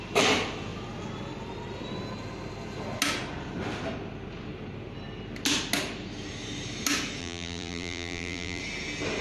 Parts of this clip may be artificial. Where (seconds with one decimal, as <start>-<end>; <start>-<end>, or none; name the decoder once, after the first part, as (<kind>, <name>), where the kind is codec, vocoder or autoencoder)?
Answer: 7.2-8.6 (vocoder, BigVGAN v2)